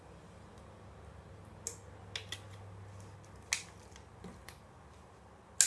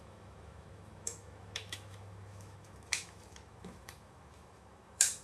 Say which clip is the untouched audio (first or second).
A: first